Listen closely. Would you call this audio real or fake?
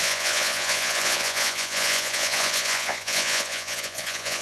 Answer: fake